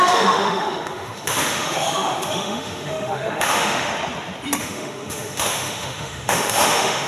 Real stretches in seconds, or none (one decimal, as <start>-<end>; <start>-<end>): 3.9-4.6